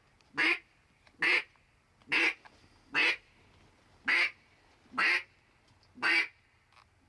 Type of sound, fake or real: real